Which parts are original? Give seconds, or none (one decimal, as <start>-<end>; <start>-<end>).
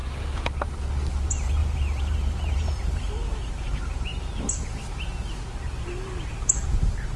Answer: 0.0-1.1; 4.1-5.8